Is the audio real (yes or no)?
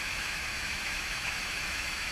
no